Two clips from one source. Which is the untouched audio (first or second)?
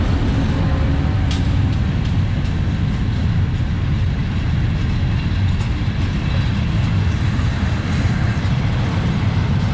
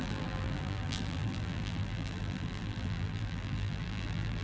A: first